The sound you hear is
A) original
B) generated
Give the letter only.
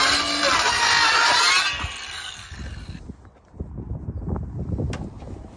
A